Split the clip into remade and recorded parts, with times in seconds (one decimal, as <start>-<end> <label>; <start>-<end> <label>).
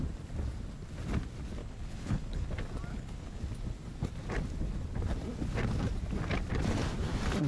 0.0-1.6 recorded; 1.6-2.5 remade; 2.5-2.9 recorded; 2.9-3.4 remade; 3.4-7.5 recorded